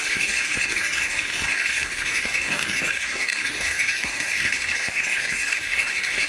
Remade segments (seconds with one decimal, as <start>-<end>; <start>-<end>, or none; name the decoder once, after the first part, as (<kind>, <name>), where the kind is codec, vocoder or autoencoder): 0.0-6.3 (codec, DAC)